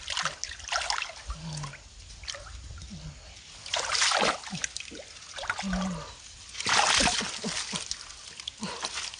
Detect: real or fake real